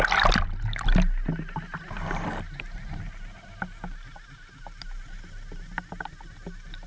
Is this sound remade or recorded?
recorded